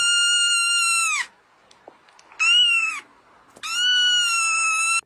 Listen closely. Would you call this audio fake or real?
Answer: real